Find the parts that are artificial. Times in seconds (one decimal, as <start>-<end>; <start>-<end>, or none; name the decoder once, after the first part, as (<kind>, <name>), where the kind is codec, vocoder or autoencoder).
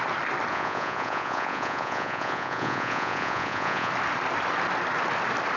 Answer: 0.5-3.9 (vocoder, Vocos)